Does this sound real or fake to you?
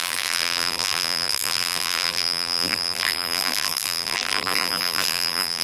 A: fake